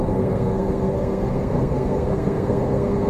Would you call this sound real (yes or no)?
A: no